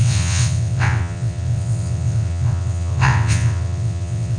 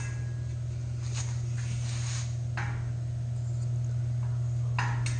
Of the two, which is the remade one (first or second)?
first